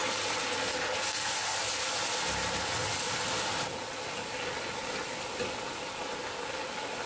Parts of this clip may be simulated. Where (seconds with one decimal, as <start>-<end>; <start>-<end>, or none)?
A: none